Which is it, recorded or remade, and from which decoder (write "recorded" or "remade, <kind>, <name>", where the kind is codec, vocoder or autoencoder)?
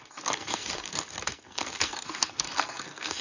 remade, codec, SNAC